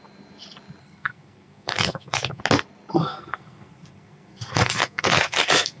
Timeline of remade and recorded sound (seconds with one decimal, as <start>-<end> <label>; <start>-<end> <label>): 0.0-0.8 recorded; 0.8-2.4 remade; 2.4-3.0 recorded; 3.0-5.8 remade